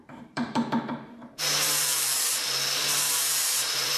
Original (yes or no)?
no